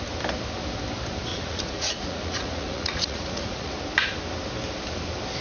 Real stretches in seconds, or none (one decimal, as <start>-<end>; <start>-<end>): 0.0-1.3; 3.7-5.4